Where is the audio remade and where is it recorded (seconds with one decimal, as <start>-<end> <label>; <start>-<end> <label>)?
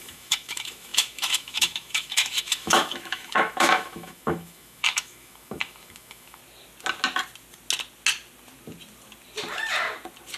0.0-6.4 remade; 6.4-10.4 recorded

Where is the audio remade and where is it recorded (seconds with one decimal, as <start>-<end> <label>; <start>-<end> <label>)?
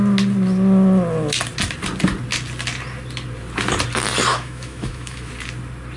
0.0-4.3 recorded; 4.3-5.3 remade; 5.3-6.0 recorded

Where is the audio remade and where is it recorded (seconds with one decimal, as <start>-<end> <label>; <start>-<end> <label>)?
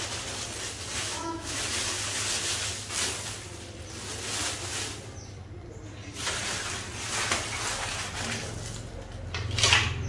0.0-1.0 recorded; 1.0-1.6 remade; 1.6-10.1 recorded